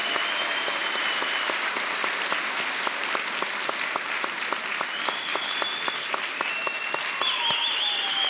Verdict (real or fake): real